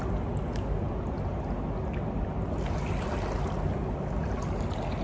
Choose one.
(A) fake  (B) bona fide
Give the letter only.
B